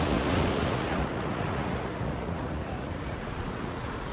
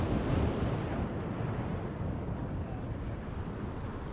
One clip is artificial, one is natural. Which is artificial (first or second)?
first